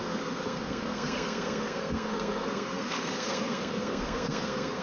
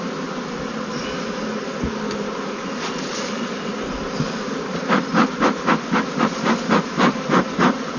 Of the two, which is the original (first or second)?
second